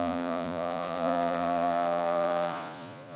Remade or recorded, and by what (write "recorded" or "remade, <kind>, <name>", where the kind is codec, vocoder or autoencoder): remade, vocoder, Vocos